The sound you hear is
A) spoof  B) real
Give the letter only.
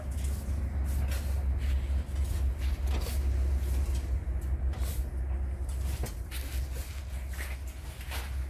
B